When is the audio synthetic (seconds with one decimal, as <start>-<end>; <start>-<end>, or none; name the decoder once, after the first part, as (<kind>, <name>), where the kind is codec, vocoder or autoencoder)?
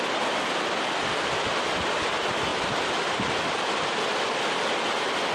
none